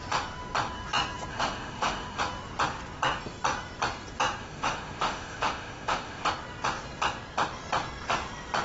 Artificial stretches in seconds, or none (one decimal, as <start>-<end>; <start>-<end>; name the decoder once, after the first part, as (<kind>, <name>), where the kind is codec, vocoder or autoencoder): 1.3-2.2 (autoencoder, DAC-VAE); 4.4-6.3